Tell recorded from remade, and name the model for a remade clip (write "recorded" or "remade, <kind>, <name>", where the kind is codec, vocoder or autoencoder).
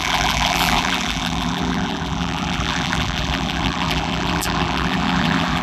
remade, vocoder, BigVGAN v2